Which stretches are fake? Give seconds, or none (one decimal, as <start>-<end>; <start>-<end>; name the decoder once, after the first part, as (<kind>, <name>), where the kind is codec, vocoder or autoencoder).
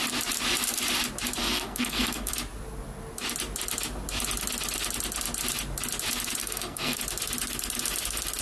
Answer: 1.4-2.3 (codec, SNAC); 6.4-7.0